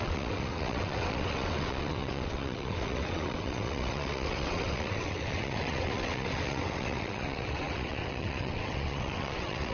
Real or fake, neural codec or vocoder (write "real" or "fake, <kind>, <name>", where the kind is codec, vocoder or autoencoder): fake, vocoder, WaveNeXt